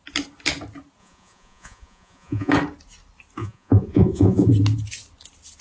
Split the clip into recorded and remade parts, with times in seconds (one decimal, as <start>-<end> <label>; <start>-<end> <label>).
0.0-1.0 recorded; 1.0-2.5 remade; 2.5-3.4 recorded; 3.4-4.5 remade; 4.5-5.6 recorded